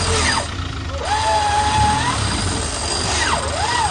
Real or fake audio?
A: real